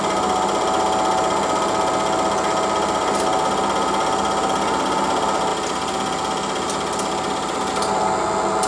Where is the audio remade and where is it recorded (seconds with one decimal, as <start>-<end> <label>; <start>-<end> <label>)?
0.0-8.7 recorded